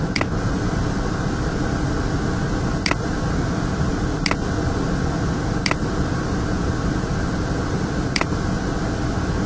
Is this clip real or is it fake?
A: real